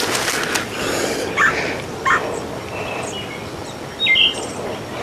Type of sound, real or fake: real